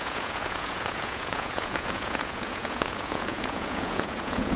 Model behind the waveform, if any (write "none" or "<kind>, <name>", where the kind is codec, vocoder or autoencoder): vocoder, Vocos